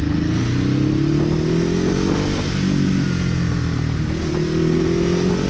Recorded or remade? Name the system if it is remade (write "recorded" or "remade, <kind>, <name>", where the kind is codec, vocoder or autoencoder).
recorded